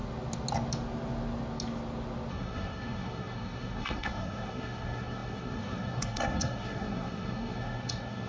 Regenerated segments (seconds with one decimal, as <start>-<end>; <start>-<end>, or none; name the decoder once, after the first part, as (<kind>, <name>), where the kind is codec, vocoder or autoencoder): 2.3-8.3 (codec, SNAC)